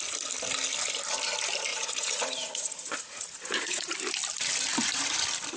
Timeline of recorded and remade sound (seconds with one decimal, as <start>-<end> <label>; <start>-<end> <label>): 0.0-1.7 recorded; 1.7-3.9 remade; 3.9-5.6 recorded